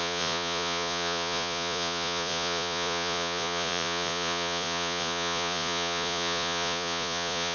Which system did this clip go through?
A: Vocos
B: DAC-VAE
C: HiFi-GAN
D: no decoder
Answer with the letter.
A